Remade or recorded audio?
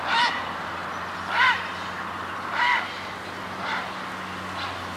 recorded